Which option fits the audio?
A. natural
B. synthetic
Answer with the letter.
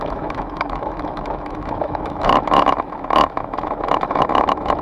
B